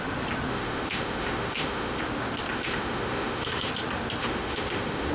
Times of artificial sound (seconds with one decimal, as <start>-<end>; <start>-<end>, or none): 0.5-2.0; 2.5-3.7; 4.2-5.1